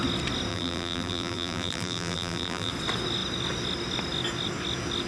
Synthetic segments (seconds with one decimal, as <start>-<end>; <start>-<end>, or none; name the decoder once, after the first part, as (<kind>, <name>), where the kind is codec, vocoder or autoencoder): 0.5-2.7 (vocoder, BigVGAN v2)